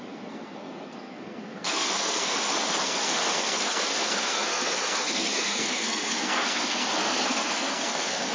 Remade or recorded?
remade